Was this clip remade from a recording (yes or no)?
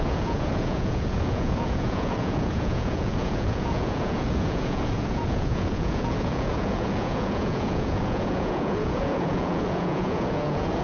yes